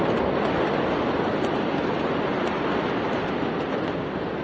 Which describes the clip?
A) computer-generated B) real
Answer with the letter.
B